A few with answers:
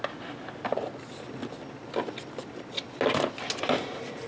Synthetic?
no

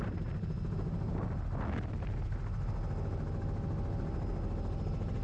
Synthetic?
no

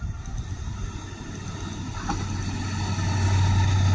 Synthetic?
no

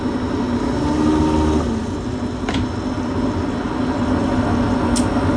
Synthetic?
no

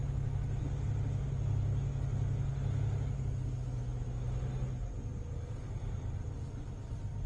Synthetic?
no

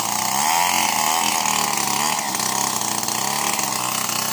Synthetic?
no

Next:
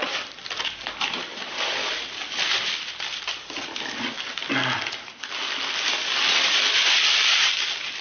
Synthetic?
no